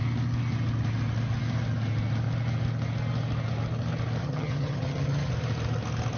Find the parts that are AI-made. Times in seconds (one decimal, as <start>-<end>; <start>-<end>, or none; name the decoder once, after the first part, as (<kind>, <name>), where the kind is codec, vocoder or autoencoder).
4.2-5.3 (vocoder, HiFi-GAN)